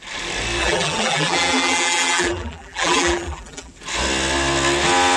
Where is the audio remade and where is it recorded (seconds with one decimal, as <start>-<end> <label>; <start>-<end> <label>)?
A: 0.0-0.6 recorded; 0.6-3.7 remade; 3.7-5.2 recorded